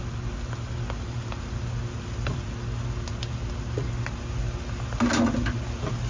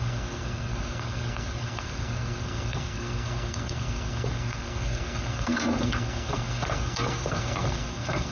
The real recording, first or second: first